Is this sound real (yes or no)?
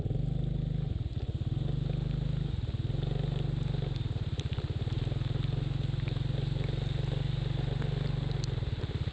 yes